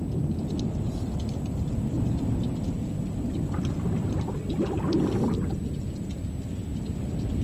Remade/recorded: recorded